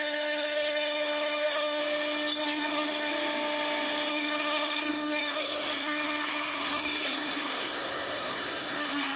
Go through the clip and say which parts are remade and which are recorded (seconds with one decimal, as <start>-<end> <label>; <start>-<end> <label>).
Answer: 0.0-1.8 remade; 1.8-2.4 recorded; 2.4-3.1 remade; 3.1-4.1 recorded; 4.1-9.2 remade